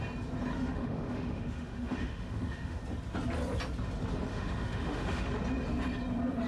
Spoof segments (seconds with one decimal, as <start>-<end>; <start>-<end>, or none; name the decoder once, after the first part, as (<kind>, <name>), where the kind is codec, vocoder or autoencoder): 0.5-2.8 (autoencoder, DAC-VAE); 4.3-5.3